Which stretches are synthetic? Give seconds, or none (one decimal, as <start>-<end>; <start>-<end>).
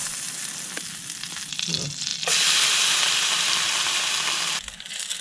none